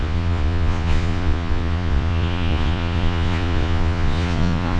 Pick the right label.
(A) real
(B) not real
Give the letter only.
B